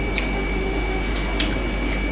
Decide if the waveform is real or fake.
real